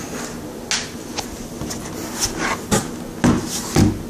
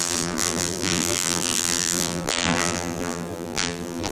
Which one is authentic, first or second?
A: first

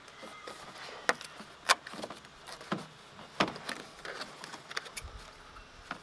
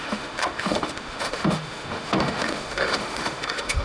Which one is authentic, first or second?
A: first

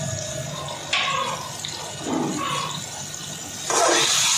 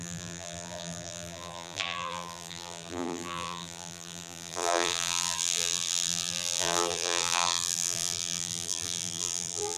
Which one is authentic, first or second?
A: first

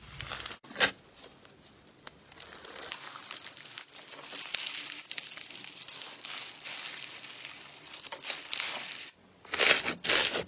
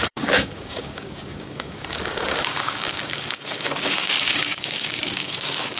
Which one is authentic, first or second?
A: first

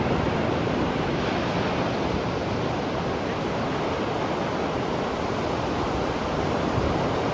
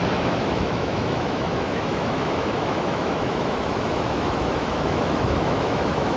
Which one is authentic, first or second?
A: first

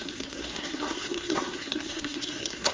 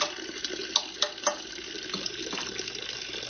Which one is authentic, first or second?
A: second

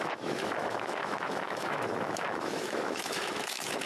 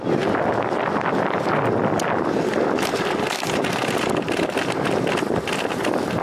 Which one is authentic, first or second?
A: second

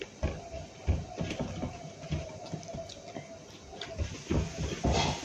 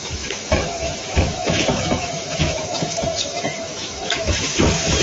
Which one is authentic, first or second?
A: first